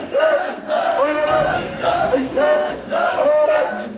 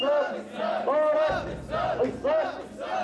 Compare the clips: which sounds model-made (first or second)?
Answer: first